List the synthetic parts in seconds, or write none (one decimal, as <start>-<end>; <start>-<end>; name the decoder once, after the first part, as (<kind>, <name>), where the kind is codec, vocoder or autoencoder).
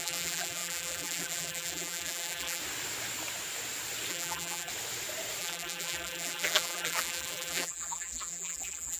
0.0-2.6 (vocoder, BigVGAN v2); 4.1-4.7; 5.4-9.0